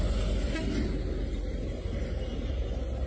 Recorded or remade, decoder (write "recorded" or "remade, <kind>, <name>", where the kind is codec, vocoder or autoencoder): recorded